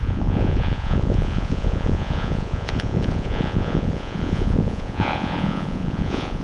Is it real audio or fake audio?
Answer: fake